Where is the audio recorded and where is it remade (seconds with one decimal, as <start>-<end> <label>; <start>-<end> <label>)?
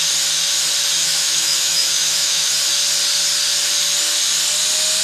0.0-1.0 recorded; 1.0-2.5 remade; 2.5-5.0 recorded